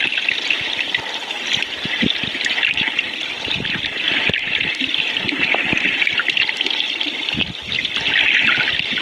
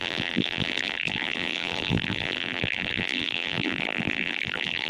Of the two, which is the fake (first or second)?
second